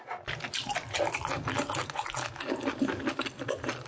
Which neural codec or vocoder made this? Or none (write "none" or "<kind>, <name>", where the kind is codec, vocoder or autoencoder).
none